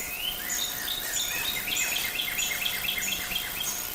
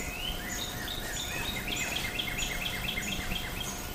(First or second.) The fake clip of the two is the second